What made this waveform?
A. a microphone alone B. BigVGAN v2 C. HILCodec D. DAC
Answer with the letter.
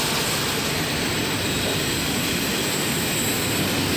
A